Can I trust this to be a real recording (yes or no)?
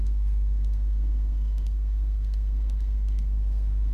no